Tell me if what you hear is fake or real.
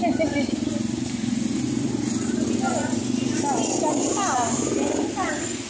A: real